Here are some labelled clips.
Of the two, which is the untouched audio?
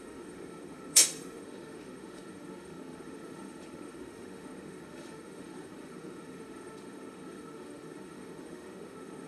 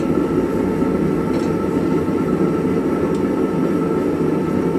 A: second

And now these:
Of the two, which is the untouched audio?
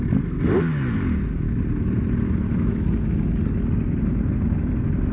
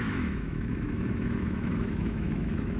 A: first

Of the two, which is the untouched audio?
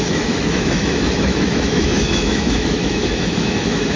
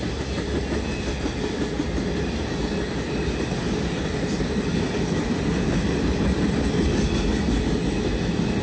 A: second